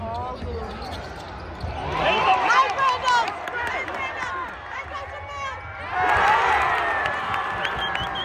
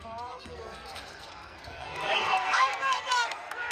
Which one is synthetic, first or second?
second